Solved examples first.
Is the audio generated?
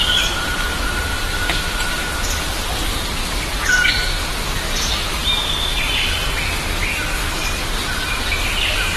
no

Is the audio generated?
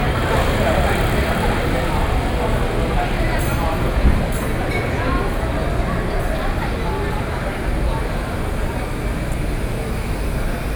no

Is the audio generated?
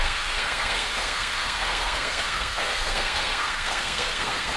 yes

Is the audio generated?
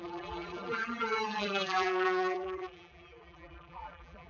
yes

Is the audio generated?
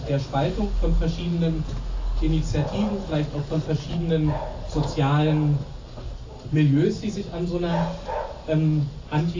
no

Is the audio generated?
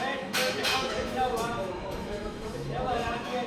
yes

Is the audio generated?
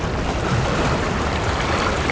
yes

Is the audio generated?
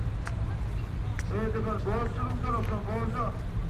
no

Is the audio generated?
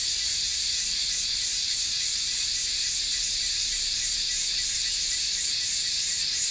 yes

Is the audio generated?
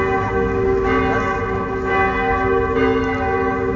no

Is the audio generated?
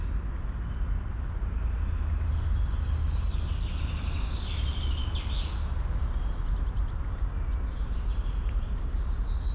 no